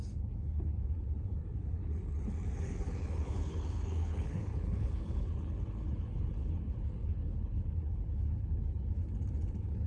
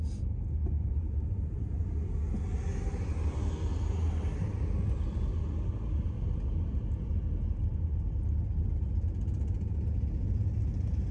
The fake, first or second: first